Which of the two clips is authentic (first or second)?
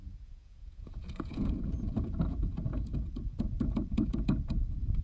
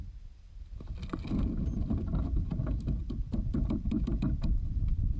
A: second